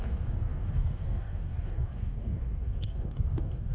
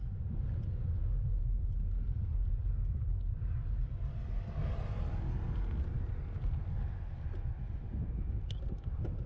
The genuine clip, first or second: second